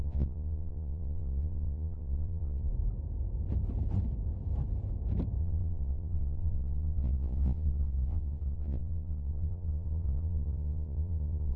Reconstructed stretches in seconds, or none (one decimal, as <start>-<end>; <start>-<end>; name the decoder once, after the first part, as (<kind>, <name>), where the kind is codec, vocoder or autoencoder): 0.0-2.7 (vocoder, Vocos); 5.4-11.6